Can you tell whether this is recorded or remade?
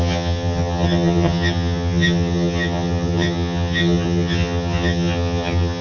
remade